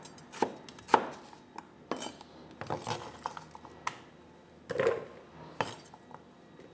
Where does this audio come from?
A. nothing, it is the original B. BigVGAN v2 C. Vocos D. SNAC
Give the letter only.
A